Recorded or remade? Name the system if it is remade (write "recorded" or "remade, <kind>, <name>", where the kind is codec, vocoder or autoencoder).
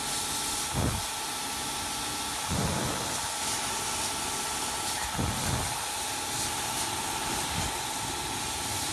recorded